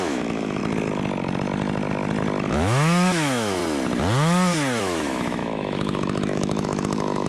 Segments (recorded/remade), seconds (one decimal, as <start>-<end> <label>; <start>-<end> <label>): 0.0-0.6 remade; 0.6-2.5 recorded; 2.5-3.6 remade; 3.6-4.8 recorded; 4.8-7.3 remade